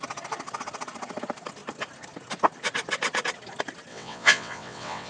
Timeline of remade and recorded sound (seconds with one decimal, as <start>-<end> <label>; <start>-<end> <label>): 0.0-3.9 recorded; 3.9-5.1 remade